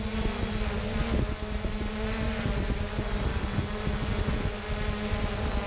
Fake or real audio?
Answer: real